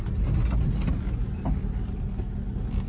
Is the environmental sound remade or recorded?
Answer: recorded